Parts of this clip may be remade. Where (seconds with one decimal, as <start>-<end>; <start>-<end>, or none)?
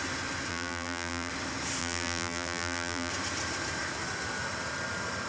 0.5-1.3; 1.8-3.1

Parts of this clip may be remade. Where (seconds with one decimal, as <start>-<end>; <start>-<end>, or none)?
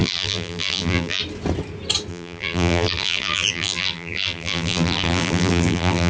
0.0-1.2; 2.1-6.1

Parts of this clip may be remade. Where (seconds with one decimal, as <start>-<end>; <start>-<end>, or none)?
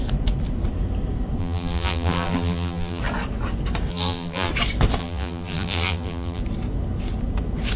1.4-3.0; 3.9-4.5; 5.0-6.4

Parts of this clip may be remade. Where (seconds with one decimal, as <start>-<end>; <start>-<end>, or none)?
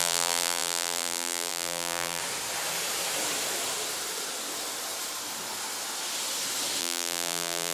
0.0-2.2; 6.8-7.7